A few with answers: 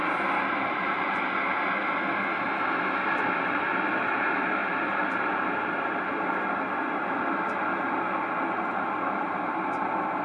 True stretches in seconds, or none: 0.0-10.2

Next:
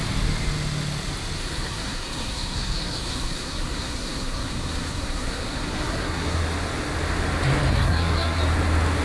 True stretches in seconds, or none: 0.0-1.4; 6.4-7.7; 8.4-9.0

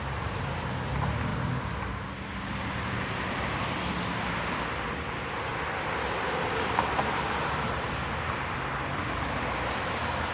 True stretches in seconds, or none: 0.0-10.3